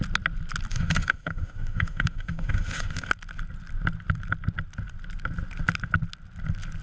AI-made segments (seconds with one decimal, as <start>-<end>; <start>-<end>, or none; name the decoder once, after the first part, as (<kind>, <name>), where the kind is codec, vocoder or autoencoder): 0.7-3.1 (autoencoder, DAC-VAE)